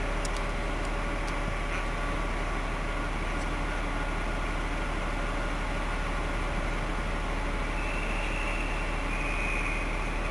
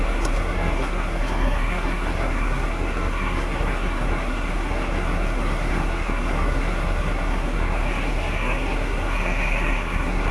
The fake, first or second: second